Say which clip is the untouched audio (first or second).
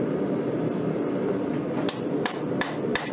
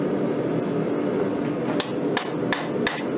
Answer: second